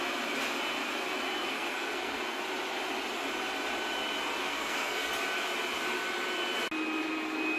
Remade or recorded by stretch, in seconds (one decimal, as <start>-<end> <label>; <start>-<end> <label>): 0.0-1.5 recorded; 1.5-2.4 remade; 2.4-4.4 recorded; 4.4-5.1 remade; 5.1-7.6 recorded